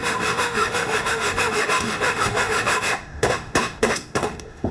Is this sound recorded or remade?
remade